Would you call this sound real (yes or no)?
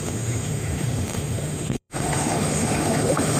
no